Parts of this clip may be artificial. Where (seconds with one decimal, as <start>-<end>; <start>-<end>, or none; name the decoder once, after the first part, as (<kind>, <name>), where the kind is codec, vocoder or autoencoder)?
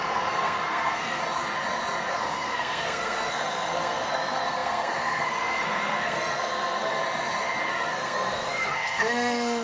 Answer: 0.0-1.2 (codec, SNAC); 2.1-7.0; 7.7-9.6